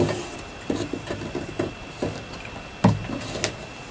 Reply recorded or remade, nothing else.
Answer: recorded